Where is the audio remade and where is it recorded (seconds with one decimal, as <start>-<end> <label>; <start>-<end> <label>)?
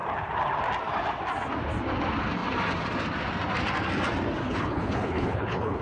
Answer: 0.0-4.4 recorded; 4.4-5.8 remade